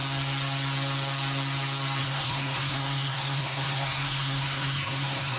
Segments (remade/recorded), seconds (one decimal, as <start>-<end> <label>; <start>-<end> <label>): 0.0-2.0 recorded; 2.0-5.4 remade